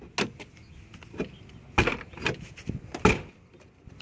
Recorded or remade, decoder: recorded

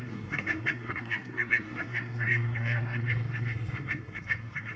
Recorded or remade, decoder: remade, codec, SNAC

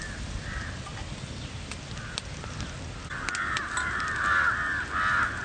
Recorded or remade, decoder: recorded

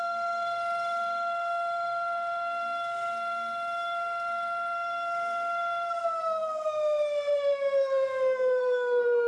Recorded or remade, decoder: remade, codec, SNAC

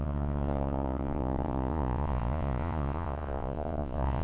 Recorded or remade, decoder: remade, vocoder, Vocos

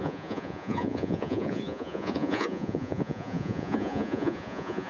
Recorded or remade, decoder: remade, vocoder, Vocos